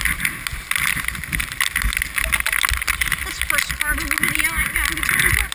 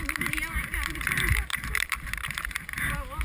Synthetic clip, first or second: second